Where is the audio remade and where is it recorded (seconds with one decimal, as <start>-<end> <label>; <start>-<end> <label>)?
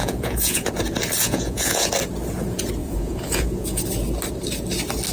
0.0-0.7 remade; 0.7-1.2 recorded; 1.2-1.9 remade; 1.9-2.8 recorded; 2.8-3.8 remade; 3.8-5.1 recorded